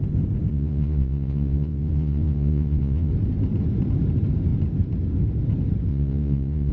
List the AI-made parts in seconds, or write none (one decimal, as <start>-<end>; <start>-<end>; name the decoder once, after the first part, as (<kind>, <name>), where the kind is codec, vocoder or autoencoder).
0.5-3.1 (vocoder, Vocos); 5.9-6.7

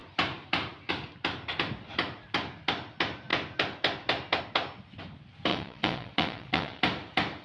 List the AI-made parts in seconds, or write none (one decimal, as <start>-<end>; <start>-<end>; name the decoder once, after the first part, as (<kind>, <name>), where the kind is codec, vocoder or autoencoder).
5.5-6.8 (vocoder, WaveNeXt)

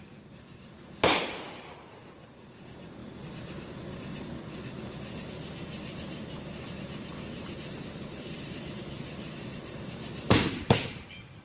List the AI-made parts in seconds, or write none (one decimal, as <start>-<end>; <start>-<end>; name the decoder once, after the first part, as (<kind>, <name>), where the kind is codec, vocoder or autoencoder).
none

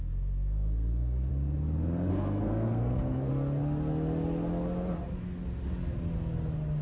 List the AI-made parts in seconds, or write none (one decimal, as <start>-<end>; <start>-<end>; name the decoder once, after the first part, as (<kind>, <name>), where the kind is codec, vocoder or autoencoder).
0.0-1.3 (codec, SNAC); 2.1-3.3